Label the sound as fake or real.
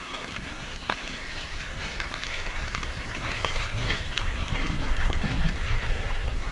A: fake